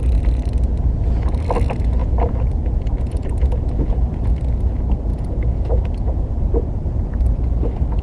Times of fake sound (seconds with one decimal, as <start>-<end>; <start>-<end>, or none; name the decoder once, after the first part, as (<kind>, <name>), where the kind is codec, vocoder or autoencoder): 2.0-4.3 (vocoder, Vocos); 5.1-6.6